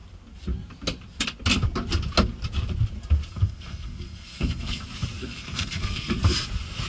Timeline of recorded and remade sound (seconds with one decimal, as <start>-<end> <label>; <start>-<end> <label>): 0.0-3.3 recorded; 3.3-4.8 remade; 4.8-5.2 recorded; 5.2-6.2 remade; 6.2-6.9 recorded